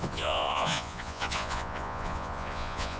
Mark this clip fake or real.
fake